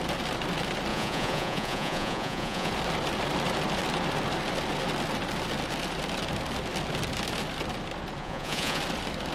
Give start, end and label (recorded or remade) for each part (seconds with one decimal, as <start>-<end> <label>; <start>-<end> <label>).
0.0-0.9 recorded; 0.9-2.7 remade; 2.7-8.2 recorded; 8.2-8.8 remade; 8.8-9.3 recorded